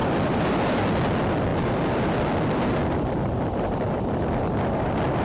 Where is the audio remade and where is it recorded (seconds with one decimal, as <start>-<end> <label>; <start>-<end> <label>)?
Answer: 0.0-0.6 remade; 0.6-1.5 recorded; 1.5-4.6 remade; 4.6-5.2 recorded